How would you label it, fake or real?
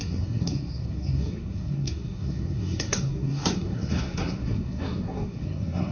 fake